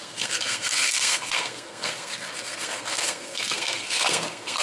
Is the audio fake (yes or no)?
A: yes